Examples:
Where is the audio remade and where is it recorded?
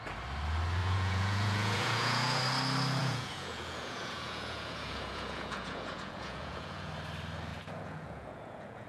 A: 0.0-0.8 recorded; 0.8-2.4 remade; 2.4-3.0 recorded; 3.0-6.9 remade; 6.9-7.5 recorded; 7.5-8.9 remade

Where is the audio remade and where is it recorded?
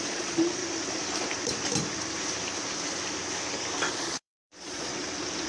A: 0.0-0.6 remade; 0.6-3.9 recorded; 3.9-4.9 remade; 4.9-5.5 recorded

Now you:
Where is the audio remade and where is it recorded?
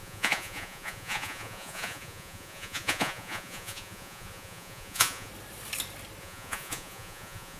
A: 0.0-5.3 remade; 5.3-6.2 recorded; 6.2-7.6 remade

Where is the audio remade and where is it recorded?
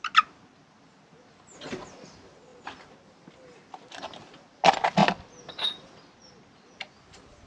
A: 0.0-7.5 recorded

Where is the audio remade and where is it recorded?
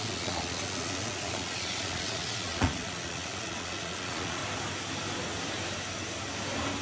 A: 0.0-4.4 remade; 4.4-6.8 recorded